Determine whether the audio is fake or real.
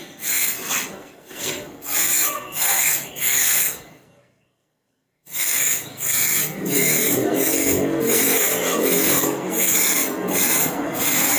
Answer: fake